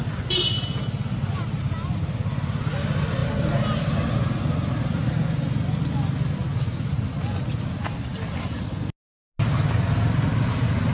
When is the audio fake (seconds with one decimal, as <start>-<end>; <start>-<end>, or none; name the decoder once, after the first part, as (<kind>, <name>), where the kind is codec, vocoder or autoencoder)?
none